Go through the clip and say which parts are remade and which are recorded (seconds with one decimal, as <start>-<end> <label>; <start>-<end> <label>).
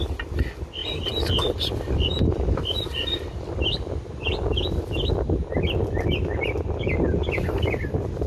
0.0-8.3 recorded